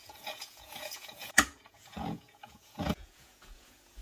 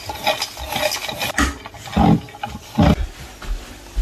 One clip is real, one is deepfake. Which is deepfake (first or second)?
first